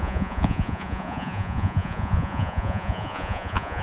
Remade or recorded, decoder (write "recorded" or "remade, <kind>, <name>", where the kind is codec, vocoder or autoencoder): remade, vocoder, Vocos